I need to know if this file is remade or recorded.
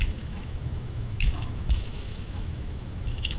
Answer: remade